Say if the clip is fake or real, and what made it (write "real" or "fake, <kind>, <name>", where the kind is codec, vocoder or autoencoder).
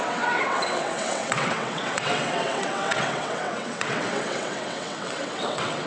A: fake, vocoder, WaveNeXt